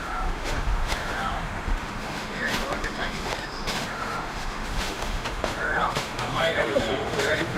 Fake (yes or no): yes